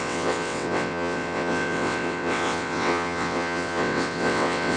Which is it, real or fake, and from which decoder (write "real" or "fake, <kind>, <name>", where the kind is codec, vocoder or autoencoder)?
fake, vocoder, WaveNeXt